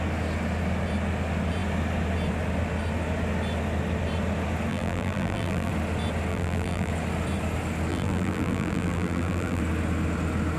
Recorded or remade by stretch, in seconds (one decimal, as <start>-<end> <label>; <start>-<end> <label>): 0.0-4.7 recorded; 4.7-5.7 remade; 5.7-6.3 recorded; 6.3-6.9 remade; 6.9-7.9 recorded; 7.9-9.6 remade; 9.6-10.6 recorded